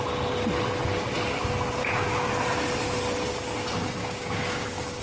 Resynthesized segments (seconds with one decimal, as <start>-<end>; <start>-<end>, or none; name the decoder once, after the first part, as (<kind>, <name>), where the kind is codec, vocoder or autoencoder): 1.8-2.3 (codec, DAC); 4.0-5.0